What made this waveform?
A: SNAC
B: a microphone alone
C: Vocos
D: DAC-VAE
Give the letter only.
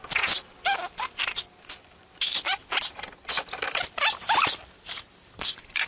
B